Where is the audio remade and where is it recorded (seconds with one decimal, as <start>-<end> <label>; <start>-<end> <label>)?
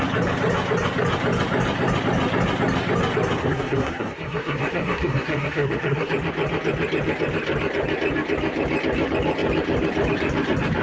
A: 0.0-3.4 recorded; 3.4-6.1 remade; 6.1-10.8 recorded